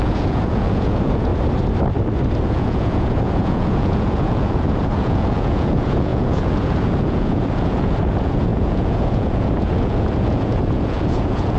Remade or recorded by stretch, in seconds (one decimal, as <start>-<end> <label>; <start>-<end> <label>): 0.0-1.3 remade; 1.3-2.4 recorded; 2.4-11.6 remade

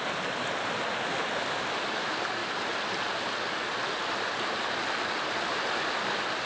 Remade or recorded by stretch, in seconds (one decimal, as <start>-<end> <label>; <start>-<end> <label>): 0.0-6.5 recorded

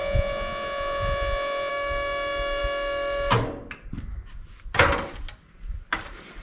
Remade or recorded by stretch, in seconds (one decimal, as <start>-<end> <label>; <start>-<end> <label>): 0.0-1.7 remade; 1.7-6.4 recorded

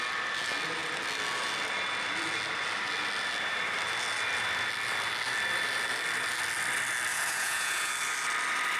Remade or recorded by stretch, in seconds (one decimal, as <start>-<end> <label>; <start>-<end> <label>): 0.0-7.1 recorded; 7.1-7.9 remade; 7.9-8.8 recorded

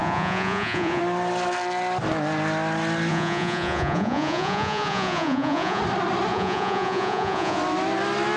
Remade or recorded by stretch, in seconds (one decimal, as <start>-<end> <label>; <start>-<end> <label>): 0.0-1.0 remade; 1.0-3.1 recorded; 3.1-5.8 remade; 5.8-6.3 recorded; 6.3-7.6 remade; 7.6-8.4 recorded

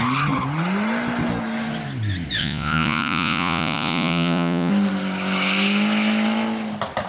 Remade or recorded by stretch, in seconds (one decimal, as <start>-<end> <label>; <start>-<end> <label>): 0.0-2.4 recorded; 2.4-4.7 remade; 4.7-7.1 recorded

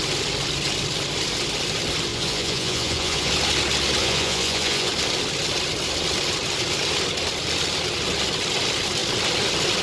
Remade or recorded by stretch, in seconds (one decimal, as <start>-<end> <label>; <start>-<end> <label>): 0.0-2.1 recorded; 2.1-3.3 remade; 3.3-4.0 recorded; 4.0-4.9 remade; 4.9-9.8 recorded

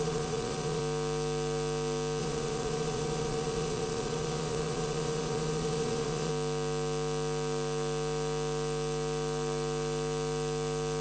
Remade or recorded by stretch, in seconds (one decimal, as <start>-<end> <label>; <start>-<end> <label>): 0.0-0.8 remade; 0.8-2.2 recorded; 2.2-6.3 remade; 6.3-11.0 recorded